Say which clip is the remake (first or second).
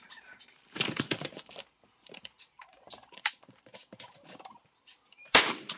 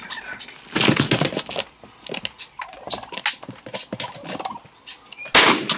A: first